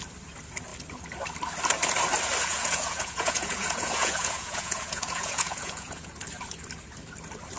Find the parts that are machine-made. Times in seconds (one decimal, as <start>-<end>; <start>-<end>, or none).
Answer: 2.5-6.1